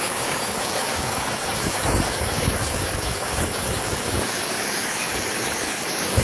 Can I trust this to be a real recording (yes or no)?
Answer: no